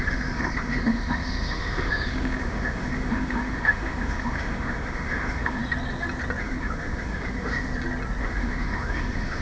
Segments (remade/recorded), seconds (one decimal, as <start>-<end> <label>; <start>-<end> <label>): 0.0-5.6 remade; 5.6-6.4 recorded; 6.4-7.7 remade; 7.7-8.2 recorded; 8.2-9.4 remade